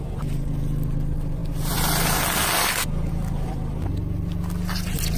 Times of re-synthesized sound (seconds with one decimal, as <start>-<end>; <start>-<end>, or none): 0.0-5.2